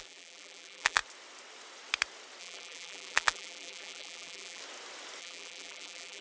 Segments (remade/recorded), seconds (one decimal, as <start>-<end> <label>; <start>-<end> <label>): 0.0-1.0 remade; 1.0-2.4 recorded; 2.4-4.6 remade; 4.6-5.2 recorded; 5.2-6.2 remade